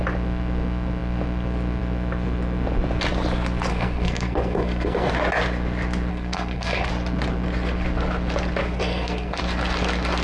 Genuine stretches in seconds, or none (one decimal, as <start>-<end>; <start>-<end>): 0.0-3.7; 5.1-6.1; 6.9-8.6; 9.4-10.2